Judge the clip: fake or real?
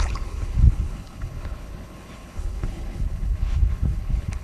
fake